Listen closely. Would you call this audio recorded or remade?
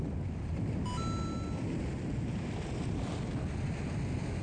recorded